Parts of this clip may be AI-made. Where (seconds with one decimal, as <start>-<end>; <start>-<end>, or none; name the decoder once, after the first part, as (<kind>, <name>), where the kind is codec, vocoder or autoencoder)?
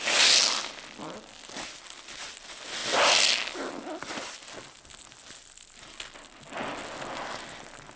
none